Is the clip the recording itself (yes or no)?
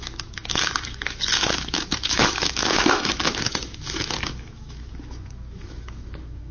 no